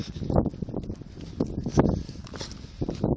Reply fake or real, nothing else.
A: real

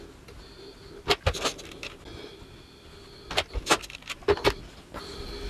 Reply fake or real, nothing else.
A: real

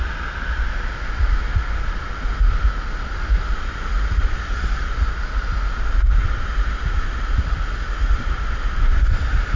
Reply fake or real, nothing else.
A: real